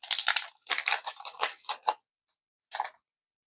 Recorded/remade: recorded